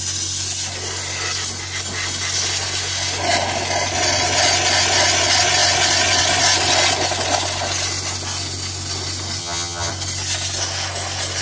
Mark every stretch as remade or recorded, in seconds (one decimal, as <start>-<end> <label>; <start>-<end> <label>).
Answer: 0.0-9.4 recorded; 9.4-9.9 remade; 9.9-11.4 recorded